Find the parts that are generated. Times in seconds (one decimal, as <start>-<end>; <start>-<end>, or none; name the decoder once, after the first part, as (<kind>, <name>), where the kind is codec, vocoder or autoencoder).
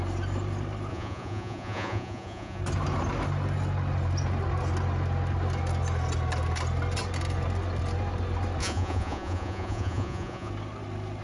0.9-2.6 (vocoder, Vocos); 8.6-10.5